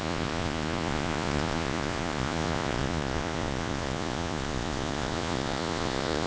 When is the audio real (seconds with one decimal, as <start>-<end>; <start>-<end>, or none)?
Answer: none